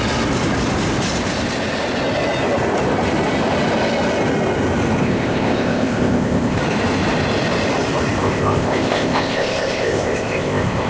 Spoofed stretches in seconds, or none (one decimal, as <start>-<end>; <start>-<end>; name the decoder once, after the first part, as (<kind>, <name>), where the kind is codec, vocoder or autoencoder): 5.0-6.6 (codec, ZipCodec); 8.2-10.9